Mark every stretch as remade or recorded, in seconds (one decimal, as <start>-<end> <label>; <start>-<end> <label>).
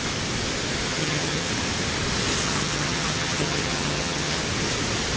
0.0-0.9 recorded; 0.9-1.5 remade; 1.5-2.4 recorded; 2.4-4.4 remade; 4.4-5.2 recorded